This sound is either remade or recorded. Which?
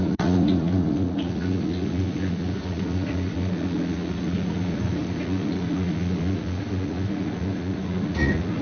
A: remade